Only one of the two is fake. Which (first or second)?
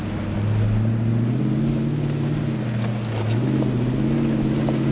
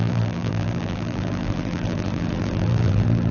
second